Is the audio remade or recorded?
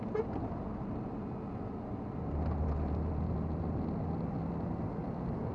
recorded